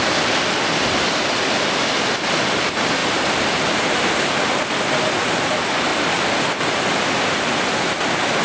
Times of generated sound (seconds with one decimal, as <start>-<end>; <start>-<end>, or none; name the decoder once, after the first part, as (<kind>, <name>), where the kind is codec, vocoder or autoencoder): none